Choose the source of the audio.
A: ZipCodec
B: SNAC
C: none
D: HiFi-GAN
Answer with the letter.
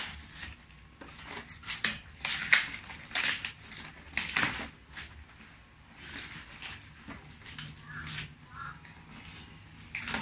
C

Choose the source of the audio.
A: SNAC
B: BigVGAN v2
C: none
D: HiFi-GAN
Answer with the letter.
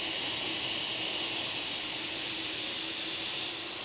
C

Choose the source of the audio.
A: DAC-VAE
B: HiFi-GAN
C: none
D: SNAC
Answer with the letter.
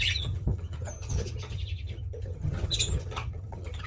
B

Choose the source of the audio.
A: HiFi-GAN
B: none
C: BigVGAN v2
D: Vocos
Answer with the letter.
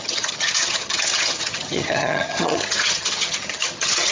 A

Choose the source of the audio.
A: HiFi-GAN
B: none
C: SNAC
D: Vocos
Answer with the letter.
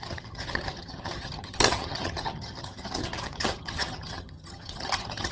A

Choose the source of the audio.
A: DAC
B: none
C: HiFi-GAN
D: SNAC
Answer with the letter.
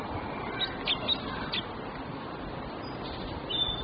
B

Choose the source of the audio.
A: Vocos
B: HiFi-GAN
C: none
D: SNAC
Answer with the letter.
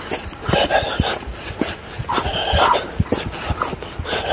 C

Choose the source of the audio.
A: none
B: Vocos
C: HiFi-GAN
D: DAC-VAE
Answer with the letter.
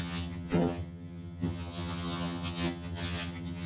C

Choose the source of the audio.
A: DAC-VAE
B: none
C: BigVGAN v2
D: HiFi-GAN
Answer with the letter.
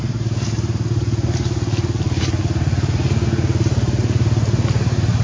B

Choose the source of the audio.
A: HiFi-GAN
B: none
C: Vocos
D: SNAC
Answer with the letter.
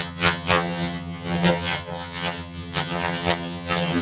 A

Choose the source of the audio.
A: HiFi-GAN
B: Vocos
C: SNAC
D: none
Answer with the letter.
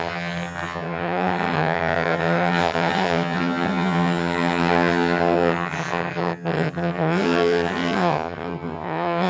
A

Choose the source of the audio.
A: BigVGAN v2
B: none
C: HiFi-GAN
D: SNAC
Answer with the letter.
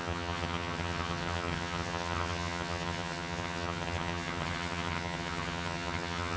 C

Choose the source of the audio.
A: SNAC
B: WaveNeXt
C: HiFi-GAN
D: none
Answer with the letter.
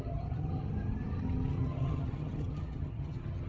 C